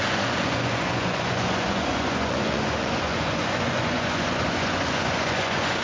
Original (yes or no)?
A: no